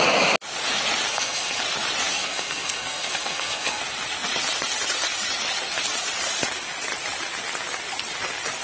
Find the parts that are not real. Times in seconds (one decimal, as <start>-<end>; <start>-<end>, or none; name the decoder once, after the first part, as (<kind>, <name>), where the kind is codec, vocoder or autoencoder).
1.1-1.6 (codec, SNAC); 2.1-3.8